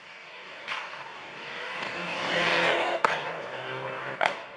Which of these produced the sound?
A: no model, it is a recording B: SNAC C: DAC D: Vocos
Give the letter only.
C